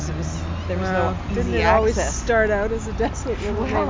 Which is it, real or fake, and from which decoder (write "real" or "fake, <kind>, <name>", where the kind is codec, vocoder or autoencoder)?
real